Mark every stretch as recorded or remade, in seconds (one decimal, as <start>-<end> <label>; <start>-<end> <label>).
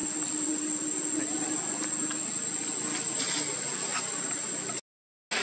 0.0-3.9 recorded; 3.9-4.5 remade; 4.5-5.4 recorded